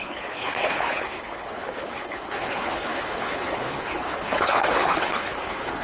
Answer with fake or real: fake